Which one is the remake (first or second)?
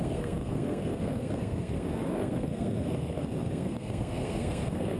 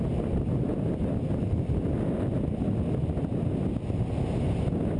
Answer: first